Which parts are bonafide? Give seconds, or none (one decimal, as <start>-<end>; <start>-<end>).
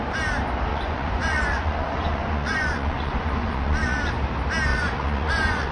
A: 0.0-0.7; 4.1-4.7